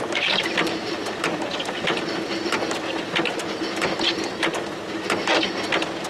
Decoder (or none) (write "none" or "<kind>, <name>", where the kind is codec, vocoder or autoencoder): none